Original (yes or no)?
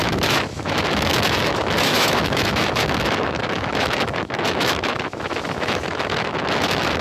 no